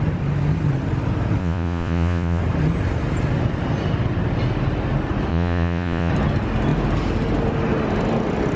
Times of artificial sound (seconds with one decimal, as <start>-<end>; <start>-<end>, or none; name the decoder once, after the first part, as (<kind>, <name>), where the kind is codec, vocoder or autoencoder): 1.4-2.4 (vocoder, Vocos); 5.3-6.1